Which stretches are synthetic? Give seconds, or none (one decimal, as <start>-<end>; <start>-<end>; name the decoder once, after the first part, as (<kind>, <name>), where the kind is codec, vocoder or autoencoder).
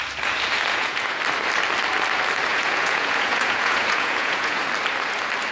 0.7-1.2 (vocoder, Vocos); 2.5-4.6